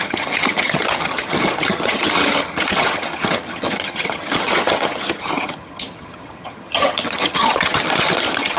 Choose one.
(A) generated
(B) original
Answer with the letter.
A